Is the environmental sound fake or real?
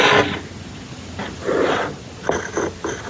real